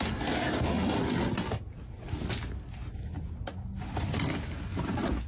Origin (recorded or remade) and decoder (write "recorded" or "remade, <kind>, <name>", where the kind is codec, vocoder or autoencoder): recorded